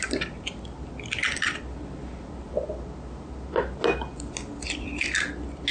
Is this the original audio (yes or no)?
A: yes